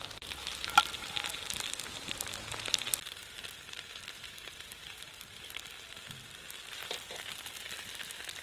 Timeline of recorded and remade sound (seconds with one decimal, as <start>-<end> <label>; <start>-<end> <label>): 0.0-4.2 recorded; 4.2-5.5 remade; 5.5-8.4 recorded